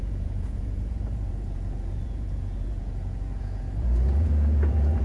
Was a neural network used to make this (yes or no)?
yes